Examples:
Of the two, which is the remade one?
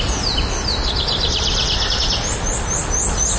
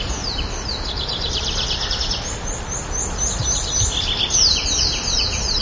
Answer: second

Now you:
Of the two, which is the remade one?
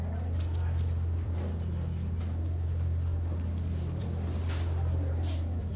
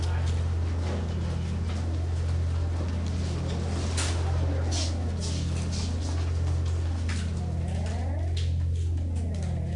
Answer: first